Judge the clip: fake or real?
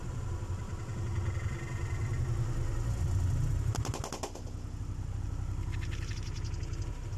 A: real